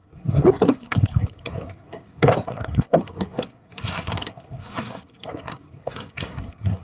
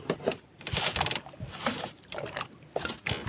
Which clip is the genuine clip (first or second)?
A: second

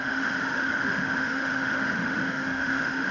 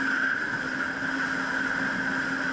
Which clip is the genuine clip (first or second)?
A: second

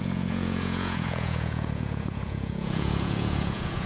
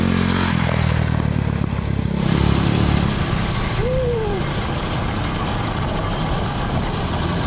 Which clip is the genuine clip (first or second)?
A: second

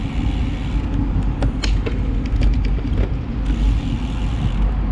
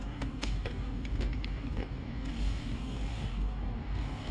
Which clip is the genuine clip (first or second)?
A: first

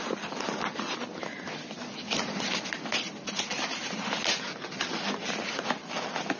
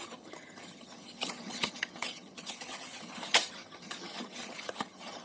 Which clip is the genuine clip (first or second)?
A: first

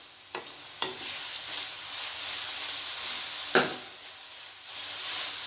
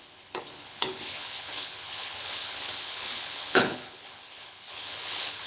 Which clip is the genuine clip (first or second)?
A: first